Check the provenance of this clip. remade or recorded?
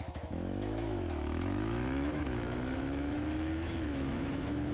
remade